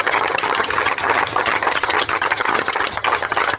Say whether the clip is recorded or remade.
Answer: remade